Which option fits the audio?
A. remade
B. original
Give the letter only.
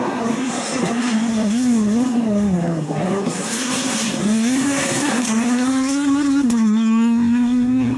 A